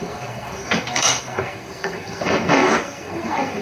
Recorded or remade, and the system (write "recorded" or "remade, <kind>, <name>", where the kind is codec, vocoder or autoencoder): remade, codec, SNAC